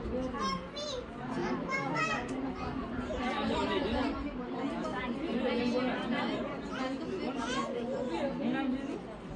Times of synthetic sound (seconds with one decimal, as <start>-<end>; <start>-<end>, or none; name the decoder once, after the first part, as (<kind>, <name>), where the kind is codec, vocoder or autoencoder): none